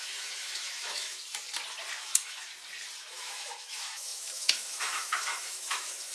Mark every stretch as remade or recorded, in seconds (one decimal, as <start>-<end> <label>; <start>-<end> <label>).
0.0-1.2 remade; 1.2-2.0 recorded; 2.0-2.5 remade; 2.5-3.0 recorded; 3.0-6.1 remade